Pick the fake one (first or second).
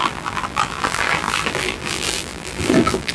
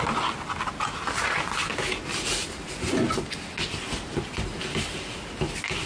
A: first